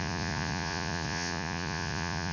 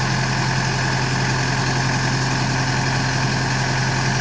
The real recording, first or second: second